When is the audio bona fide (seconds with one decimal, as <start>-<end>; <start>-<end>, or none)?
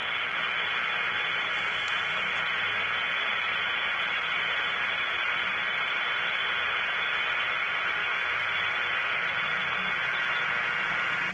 0.0-11.3